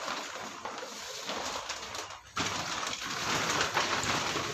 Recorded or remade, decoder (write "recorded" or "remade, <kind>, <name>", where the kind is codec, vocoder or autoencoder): recorded